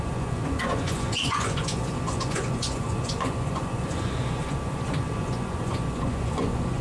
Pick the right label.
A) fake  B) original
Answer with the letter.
A